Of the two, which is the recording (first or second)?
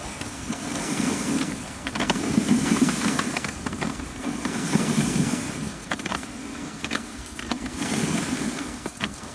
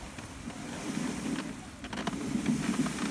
second